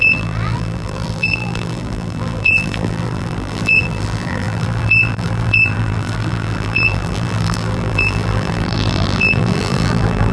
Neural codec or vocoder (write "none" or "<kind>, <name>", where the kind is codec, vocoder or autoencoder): vocoder, BigVGAN v2